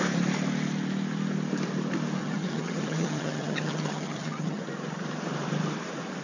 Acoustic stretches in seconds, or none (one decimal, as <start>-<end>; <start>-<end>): 0.0-2.2; 4.6-6.2